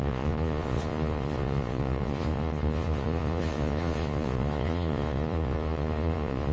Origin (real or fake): fake